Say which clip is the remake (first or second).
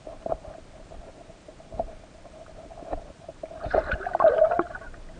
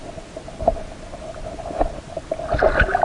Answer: first